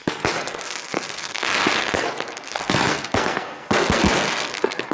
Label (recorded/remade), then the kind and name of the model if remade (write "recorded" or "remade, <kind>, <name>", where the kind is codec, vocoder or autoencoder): remade, codec, SNAC